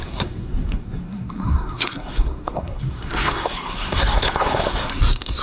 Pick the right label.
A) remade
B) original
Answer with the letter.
A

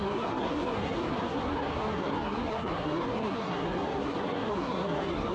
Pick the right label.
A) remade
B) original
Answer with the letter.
A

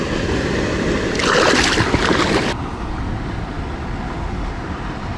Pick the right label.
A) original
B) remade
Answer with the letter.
A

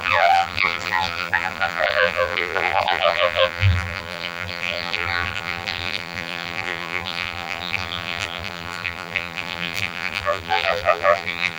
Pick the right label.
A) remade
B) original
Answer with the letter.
A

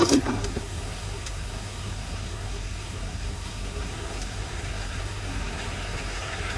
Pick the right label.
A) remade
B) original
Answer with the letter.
A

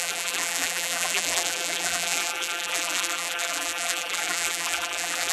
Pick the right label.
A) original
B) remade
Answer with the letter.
B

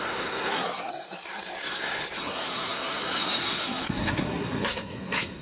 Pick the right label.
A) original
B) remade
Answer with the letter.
B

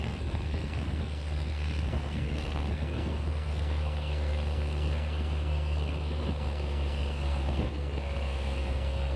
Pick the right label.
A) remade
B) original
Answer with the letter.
A